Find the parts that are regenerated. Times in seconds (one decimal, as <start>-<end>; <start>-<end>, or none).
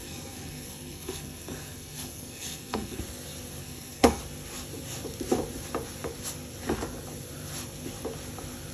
0.0-3.0; 3.6-4.2